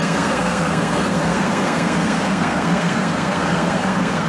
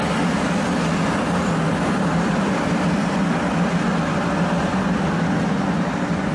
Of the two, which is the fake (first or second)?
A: first